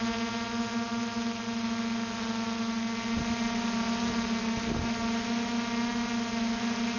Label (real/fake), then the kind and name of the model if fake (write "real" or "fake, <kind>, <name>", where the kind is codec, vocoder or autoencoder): real